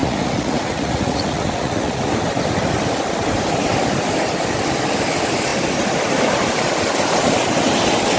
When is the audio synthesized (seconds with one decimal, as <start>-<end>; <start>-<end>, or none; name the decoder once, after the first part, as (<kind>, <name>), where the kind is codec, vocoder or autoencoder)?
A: 0.0-2.1 (vocoder, Vocos)